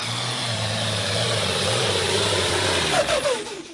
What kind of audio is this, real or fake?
fake